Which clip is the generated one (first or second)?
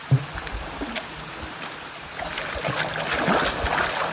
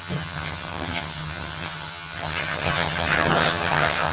second